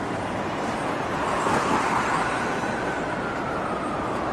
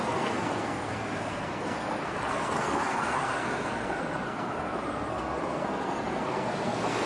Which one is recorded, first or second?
first